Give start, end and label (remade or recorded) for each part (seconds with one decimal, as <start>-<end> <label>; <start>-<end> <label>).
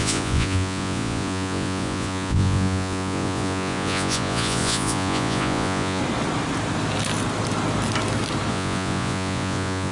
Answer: 0.0-6.0 remade; 6.0-8.5 recorded; 8.5-9.9 remade